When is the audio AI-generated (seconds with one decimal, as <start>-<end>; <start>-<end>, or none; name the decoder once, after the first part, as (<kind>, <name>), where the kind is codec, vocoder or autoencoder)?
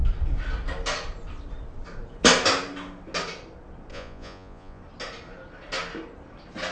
3.9-4.8 (vocoder, Vocos)